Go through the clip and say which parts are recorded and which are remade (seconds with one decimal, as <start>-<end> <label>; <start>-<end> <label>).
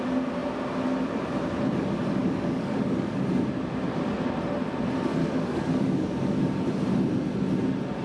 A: 0.0-2.2 recorded; 2.2-3.2 remade; 3.2-5.2 recorded; 5.2-6.4 remade; 6.4-8.0 recorded